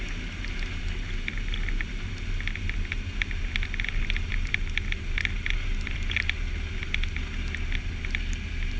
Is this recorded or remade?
recorded